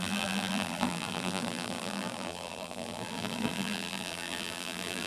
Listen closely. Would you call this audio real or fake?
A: fake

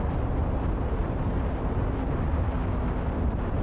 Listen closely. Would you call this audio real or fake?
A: real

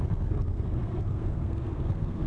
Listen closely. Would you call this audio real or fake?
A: fake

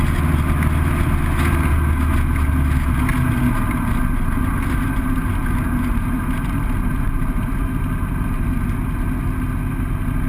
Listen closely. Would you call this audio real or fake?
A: real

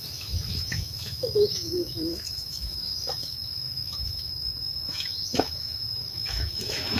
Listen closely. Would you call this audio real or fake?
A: fake